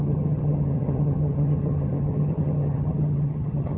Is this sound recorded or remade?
remade